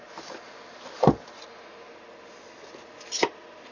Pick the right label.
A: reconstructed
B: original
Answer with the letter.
B